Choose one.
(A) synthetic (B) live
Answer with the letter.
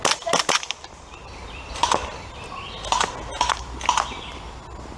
B